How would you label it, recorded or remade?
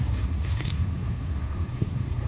remade